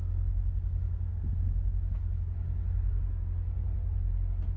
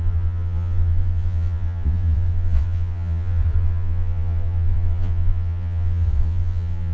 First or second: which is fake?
second